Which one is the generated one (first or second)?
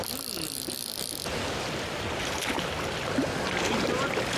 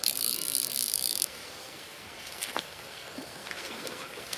second